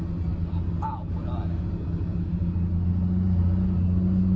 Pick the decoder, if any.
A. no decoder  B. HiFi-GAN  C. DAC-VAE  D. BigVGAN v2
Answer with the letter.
A